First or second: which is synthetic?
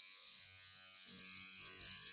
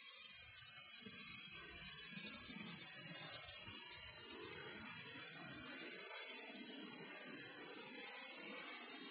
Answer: first